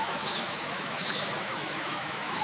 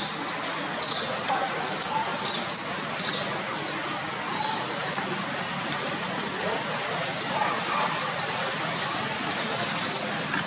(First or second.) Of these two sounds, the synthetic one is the first